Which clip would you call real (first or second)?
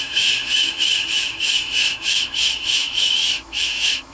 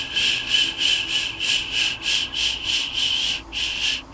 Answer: second